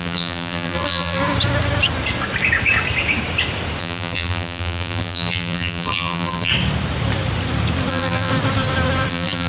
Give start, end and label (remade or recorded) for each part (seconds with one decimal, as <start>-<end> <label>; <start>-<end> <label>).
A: 0.0-1.2 remade; 1.2-3.8 recorded; 3.8-6.5 remade; 6.5-7.9 recorded; 7.9-8.3 remade; 8.3-9.1 recorded; 9.1-9.5 remade